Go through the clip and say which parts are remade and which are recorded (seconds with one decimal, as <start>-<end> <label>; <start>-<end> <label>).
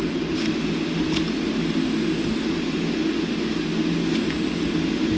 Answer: 0.0-5.2 recorded